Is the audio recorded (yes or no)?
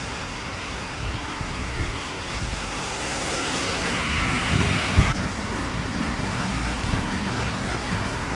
no